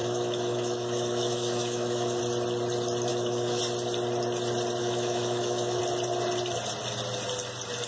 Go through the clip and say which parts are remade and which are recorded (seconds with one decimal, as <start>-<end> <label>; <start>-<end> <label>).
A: 0.0-2.2 remade; 2.2-3.1 recorded; 3.1-3.6 remade; 3.6-4.8 recorded; 4.8-5.8 remade; 5.8-7.9 recorded